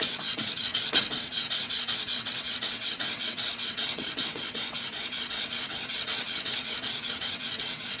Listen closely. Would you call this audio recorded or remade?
remade